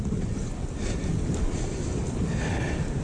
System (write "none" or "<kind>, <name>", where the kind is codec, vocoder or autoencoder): none